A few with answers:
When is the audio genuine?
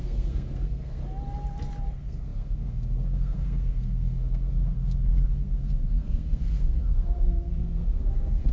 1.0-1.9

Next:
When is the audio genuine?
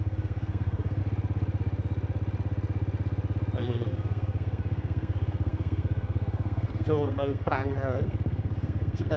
1.0-3.6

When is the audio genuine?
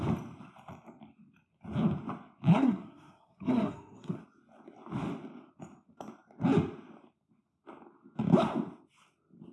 0.0-2.5; 4.2-9.5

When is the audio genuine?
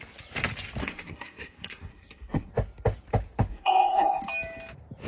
0.0-0.8; 2.5-3.5; 4.2-5.1